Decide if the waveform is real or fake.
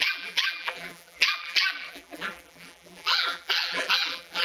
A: fake